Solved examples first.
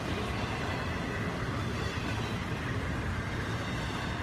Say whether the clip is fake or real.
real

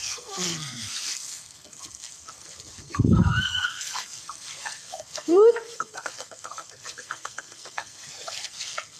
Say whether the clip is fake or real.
fake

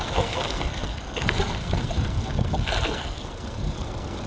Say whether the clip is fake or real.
fake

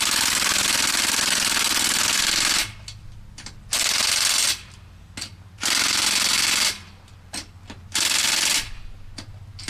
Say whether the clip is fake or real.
real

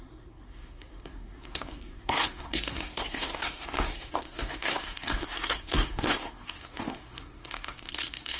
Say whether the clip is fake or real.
fake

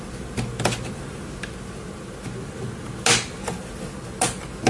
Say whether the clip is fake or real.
real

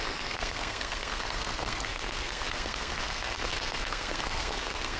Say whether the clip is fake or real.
fake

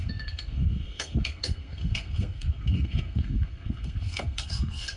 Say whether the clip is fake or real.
fake